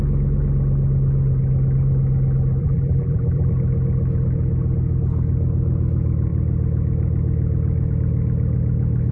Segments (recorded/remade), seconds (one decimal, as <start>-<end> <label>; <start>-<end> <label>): 0.0-2.6 recorded; 2.6-3.5 remade; 3.5-9.1 recorded